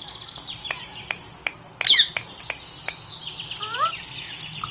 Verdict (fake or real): real